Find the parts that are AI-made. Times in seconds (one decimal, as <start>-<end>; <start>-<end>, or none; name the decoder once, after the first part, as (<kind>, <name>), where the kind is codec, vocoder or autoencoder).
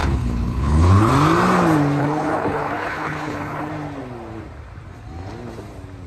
0.0-1.1 (codec, HILCodec); 2.0-3.7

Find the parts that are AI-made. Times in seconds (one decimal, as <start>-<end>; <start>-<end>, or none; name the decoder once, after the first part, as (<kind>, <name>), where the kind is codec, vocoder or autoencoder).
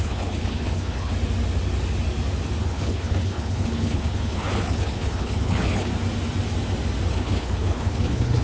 0.0-1.1 (codec, HILCodec); 2.6-5.9; 7.1-8.4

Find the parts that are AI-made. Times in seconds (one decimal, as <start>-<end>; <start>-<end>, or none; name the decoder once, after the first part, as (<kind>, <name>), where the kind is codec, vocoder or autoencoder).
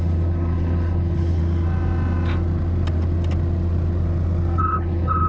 0.0-1.4 (codec, HILCodec); 4.6-5.3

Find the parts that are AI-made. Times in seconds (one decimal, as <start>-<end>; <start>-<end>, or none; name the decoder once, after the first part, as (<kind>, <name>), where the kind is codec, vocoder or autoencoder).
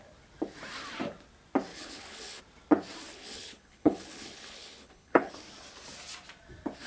1.7-2.4 (codec, HILCodec); 3.1-5.3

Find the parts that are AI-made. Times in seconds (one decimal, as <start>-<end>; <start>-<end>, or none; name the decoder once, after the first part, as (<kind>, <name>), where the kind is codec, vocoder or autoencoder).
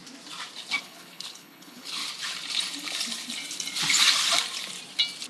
0.8-2.0 (codec, HILCodec)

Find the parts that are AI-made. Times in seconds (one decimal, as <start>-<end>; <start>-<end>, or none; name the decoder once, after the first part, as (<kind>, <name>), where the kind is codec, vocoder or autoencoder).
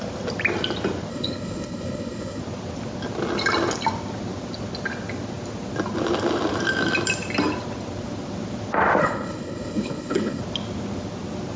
1.1-2.4 (codec, HILCodec); 9.0-10.4